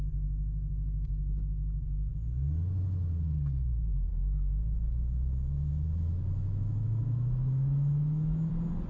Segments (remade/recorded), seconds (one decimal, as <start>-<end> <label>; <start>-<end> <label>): 0.0-4.1 recorded; 4.1-8.5 remade; 8.5-8.9 recorded